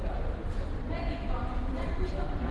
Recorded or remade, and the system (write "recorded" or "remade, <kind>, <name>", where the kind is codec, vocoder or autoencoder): recorded